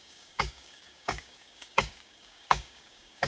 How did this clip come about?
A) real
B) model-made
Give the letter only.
B